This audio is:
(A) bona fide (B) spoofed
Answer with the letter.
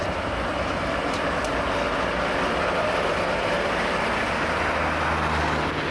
A